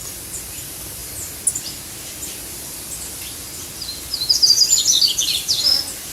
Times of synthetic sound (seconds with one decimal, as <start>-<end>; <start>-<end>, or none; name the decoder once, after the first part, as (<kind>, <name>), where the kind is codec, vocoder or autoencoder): none